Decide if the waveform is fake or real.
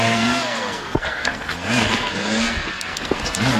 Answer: fake